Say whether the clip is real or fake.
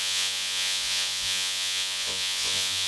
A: fake